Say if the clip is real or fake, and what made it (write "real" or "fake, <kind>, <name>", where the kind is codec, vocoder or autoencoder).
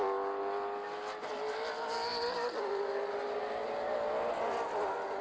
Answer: real